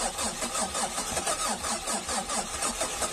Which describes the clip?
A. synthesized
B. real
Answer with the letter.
A